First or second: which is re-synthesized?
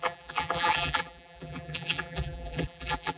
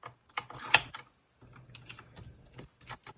first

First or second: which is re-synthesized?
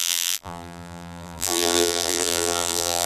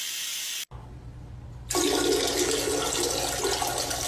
first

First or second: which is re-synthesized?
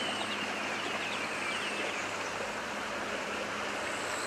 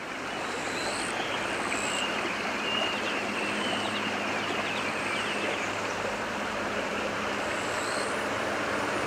second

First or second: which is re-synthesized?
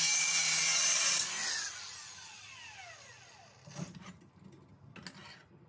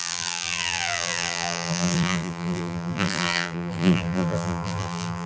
second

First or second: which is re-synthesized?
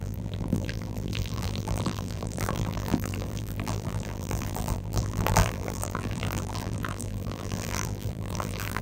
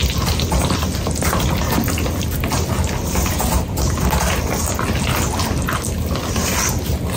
first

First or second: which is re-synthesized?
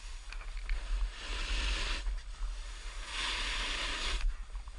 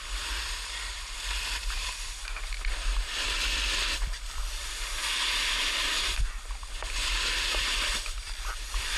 second